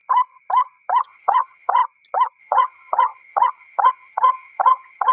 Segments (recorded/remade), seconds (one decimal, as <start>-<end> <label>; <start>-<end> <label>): 0.0-1.0 recorded; 1.0-1.8 remade; 1.8-2.4 recorded; 2.4-5.1 remade